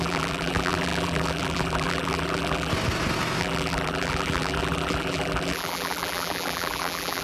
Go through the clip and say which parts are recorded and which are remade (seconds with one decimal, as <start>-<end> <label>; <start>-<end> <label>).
0.0-2.7 remade; 2.7-3.4 recorded; 3.4-7.2 remade